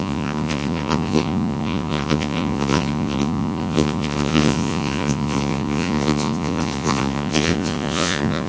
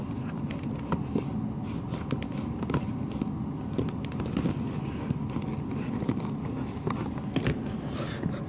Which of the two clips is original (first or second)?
second